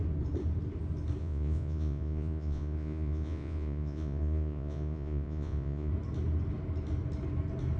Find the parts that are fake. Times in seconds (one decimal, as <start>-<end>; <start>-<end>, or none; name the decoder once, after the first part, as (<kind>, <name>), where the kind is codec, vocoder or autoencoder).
1.2-5.9 (vocoder, Vocos)